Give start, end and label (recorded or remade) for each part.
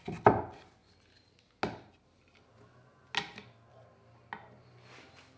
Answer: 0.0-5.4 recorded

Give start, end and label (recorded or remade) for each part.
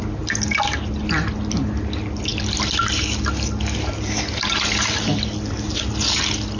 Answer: 0.0-6.6 recorded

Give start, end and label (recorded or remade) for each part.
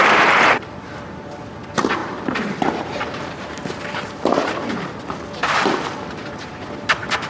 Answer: 0.0-1.3 remade; 1.3-2.0 recorded; 2.0-3.8 remade; 3.8-7.3 recorded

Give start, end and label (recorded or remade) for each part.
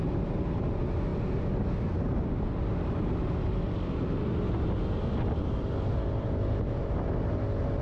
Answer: 0.0-7.8 recorded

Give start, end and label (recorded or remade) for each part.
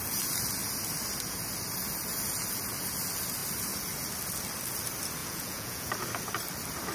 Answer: 0.0-5.2 recorded; 5.2-5.9 remade; 5.9-6.9 recorded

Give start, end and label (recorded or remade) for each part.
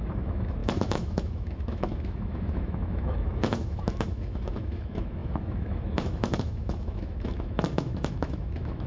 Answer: 0.0-8.9 remade